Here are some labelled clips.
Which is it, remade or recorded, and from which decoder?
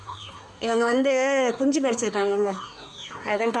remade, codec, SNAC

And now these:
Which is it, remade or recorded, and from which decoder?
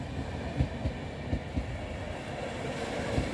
recorded